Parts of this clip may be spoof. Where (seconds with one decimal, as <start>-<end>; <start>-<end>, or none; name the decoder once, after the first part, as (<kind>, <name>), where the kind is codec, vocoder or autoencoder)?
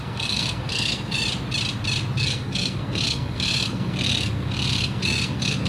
0.0-1.2 (codec, SNAC); 2.2-5.7